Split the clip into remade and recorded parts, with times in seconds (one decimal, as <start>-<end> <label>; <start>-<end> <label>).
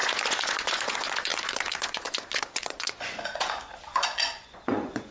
0.0-5.1 remade